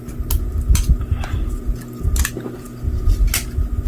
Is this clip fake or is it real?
real